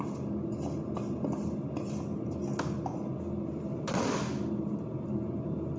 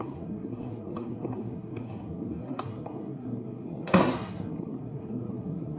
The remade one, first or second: second